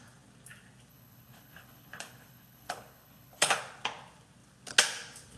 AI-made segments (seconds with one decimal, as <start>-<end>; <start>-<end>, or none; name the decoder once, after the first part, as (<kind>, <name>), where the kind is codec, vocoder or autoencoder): 0.9-3.6 (codec, HILCodec)